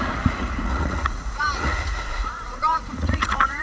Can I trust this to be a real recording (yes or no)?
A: no